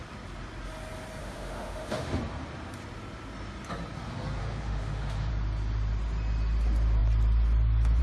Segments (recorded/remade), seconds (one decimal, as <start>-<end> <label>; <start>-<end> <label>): 0.0-1.2 recorded; 1.2-2.2 remade; 2.2-4.4 recorded; 4.4-5.3 remade; 5.3-8.0 recorded